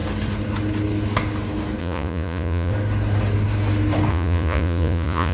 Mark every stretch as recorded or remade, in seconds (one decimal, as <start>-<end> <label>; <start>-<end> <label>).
0.0-1.8 recorded; 1.8-2.7 remade; 2.7-4.1 recorded; 4.1-5.3 remade